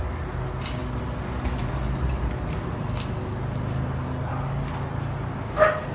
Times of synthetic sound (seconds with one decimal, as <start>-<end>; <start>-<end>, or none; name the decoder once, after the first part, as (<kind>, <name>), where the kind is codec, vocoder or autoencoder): none